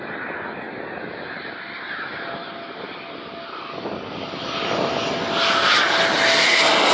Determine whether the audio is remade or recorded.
recorded